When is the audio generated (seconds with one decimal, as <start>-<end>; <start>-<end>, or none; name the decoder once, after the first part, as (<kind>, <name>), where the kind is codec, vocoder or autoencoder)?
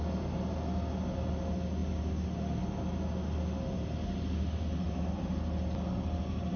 none